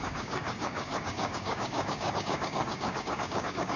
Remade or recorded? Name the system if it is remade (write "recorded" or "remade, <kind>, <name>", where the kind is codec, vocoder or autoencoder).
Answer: remade, codec, DAC